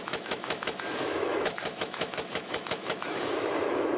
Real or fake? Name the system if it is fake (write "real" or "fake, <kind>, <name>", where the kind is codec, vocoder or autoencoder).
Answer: fake, autoencoder, DAC-VAE